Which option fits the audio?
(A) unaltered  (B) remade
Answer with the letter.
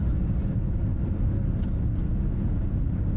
A